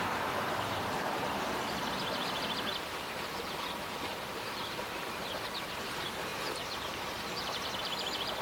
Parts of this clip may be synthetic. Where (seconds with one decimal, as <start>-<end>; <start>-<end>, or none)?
0.0-8.4